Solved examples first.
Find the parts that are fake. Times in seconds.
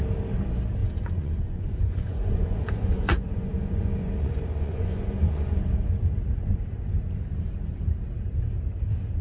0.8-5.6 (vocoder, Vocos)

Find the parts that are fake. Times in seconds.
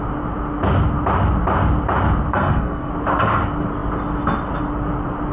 2.3-2.9 (codec, SNAC)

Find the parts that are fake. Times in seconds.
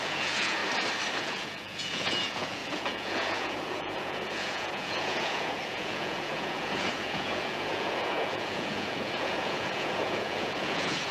0.0-0.6 (vocoder, Vocos); 1.2-11.1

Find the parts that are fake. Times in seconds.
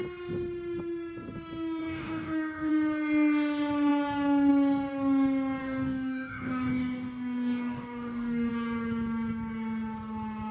1.8-2.7 (codec, DAC); 5.6-8.5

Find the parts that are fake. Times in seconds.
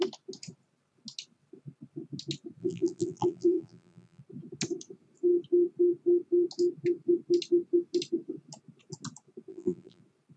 2.6-4.2 (vocoder, BigVGAN v2); 9.5-10.0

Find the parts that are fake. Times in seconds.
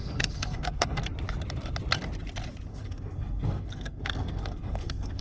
0.0-1.0 (codec, SNAC); 2.7-5.2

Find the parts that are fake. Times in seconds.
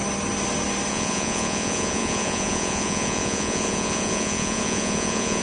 0.9-5.4 (vocoder, Vocos)